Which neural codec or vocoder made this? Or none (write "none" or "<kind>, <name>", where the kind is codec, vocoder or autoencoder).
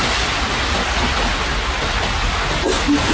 none